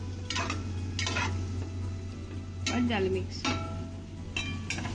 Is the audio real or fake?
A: real